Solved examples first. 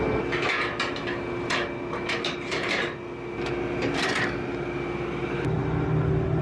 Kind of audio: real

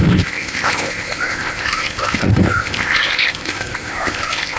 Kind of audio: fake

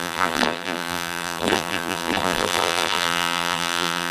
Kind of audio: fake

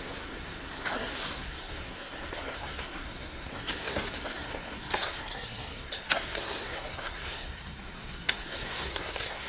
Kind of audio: fake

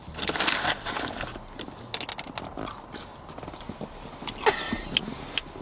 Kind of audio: real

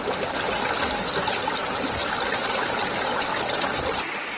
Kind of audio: real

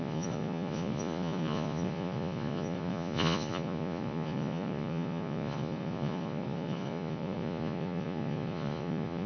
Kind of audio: fake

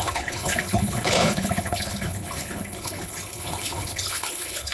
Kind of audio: fake